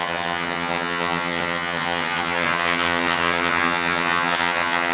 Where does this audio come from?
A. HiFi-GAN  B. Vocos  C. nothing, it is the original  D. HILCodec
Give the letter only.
A